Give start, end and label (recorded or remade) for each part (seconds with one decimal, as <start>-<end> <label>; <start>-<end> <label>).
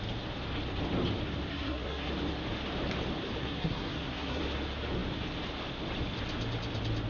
0.0-1.5 recorded; 1.5-2.1 remade; 2.1-3.4 recorded; 3.4-4.4 remade; 4.4-7.1 recorded